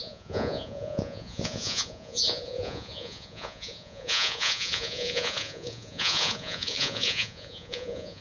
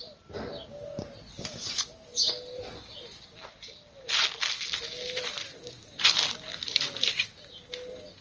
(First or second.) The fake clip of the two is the first